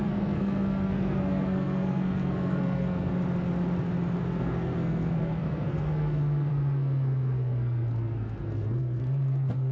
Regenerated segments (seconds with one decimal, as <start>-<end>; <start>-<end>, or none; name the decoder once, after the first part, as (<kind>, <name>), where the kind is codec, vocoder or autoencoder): 0.0-3.1 (codec, SNAC); 4.2-9.7